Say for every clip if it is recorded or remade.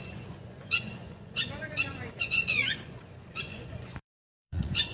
remade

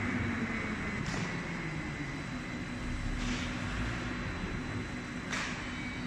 recorded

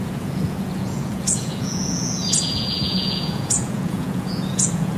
remade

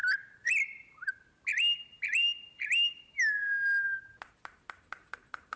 recorded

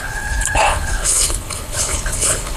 remade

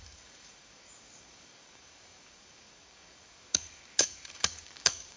remade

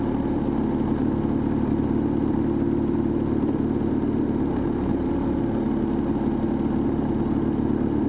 recorded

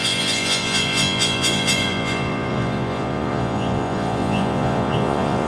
remade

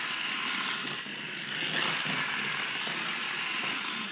recorded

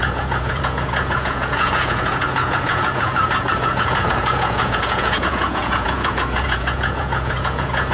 remade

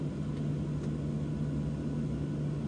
recorded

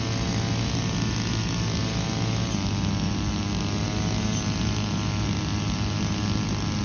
recorded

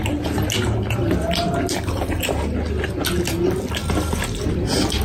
recorded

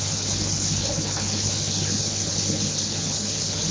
remade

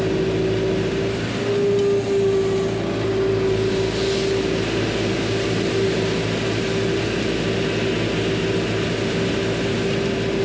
recorded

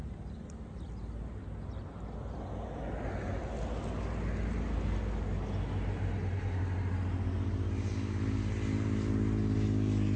recorded